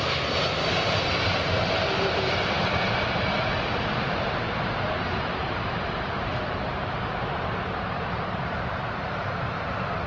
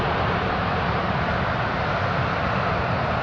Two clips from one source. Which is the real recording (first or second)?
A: second